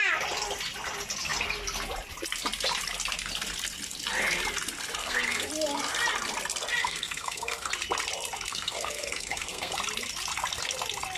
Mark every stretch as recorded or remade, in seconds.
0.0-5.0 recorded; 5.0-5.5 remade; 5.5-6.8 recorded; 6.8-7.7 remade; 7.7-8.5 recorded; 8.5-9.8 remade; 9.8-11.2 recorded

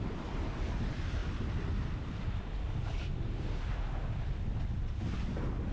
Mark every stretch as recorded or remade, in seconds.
0.0-5.7 recorded

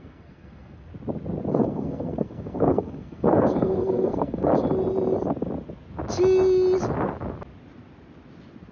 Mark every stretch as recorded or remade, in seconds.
0.0-0.9 remade; 0.9-1.5 recorded; 1.5-4.5 remade; 4.5-8.7 recorded

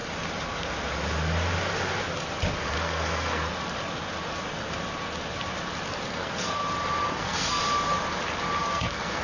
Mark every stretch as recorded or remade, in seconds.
0.0-2.8 recorded; 2.8-3.4 remade; 3.4-6.0 recorded; 6.0-6.6 remade; 6.6-7.1 recorded; 7.1-7.6 remade; 7.6-8.6 recorded; 8.6-9.2 remade